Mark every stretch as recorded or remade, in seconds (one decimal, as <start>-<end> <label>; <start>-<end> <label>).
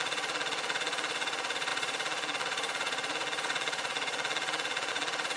0.0-5.4 remade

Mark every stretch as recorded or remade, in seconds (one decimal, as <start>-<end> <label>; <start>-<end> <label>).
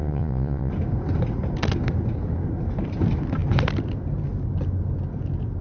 0.0-0.7 remade; 0.7-5.6 recorded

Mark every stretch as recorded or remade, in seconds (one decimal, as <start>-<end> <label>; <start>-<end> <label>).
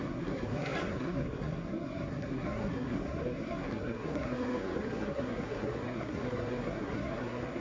0.0-7.6 remade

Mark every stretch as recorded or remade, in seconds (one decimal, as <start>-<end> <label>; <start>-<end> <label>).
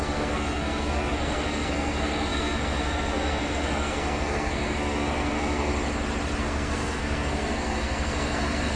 0.0-5.7 remade; 5.7-6.4 recorded; 6.4-8.8 remade